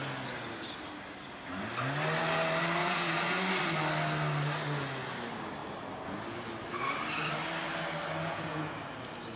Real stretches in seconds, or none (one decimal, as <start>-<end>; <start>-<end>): 0.0-2.8; 3.4-8.2; 8.7-9.4